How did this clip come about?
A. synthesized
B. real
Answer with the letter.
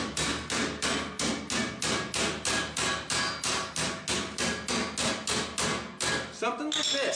B